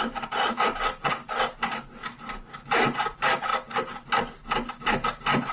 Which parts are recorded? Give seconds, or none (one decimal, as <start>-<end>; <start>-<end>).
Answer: 0.0-5.5